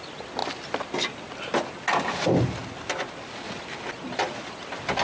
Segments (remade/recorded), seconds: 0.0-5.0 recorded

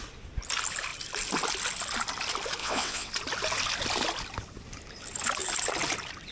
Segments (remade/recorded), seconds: 0.0-2.6 recorded; 2.6-3.1 remade; 3.1-6.3 recorded

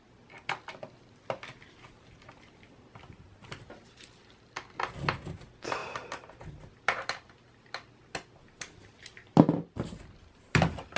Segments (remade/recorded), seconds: 0.0-11.0 recorded

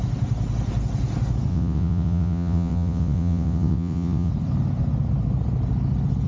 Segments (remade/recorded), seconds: 0.0-1.5 recorded; 1.5-4.3 remade; 4.3-6.3 recorded

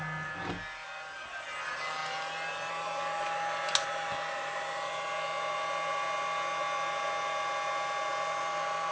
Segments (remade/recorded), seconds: 0.0-8.9 recorded

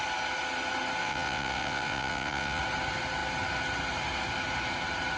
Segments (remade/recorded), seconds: 0.0-1.0 recorded; 1.0-2.6 remade; 2.6-5.2 recorded

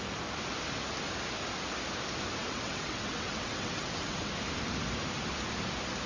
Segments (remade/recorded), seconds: 0.0-2.4 recorded; 2.4-4.3 remade; 4.3-6.1 recorded